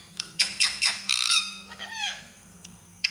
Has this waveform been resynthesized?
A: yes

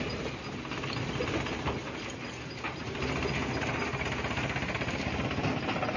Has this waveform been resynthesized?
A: no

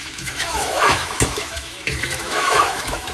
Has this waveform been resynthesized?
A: yes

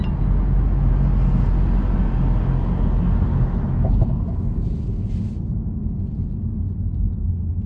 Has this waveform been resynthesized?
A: no